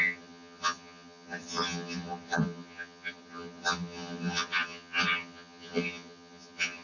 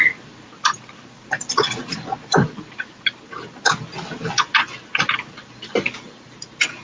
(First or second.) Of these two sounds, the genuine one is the second